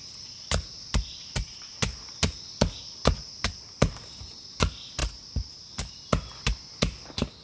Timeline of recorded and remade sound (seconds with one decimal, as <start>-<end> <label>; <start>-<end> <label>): 0.0-7.4 recorded